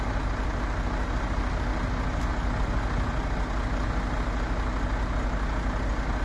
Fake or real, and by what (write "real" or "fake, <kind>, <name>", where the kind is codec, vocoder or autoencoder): real